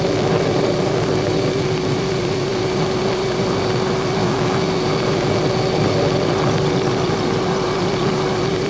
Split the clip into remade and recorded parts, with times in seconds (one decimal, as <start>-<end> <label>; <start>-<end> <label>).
0.0-4.2 recorded; 4.2-5.4 remade; 5.4-8.7 recorded